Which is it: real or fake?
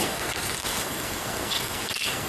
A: fake